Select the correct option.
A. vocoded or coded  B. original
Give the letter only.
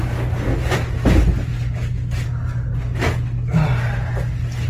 B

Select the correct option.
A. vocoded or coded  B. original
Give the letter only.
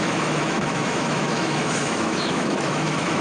A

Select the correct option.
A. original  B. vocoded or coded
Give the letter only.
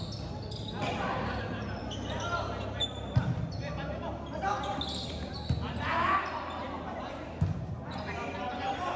A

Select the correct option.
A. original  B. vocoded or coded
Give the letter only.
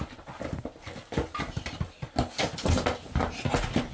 A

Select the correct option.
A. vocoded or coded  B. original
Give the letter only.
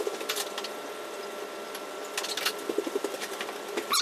B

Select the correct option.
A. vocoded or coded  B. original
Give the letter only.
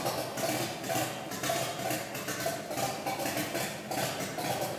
B